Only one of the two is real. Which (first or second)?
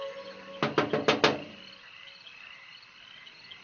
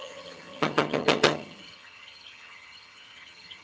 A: first